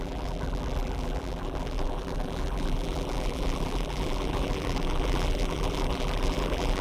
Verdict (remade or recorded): remade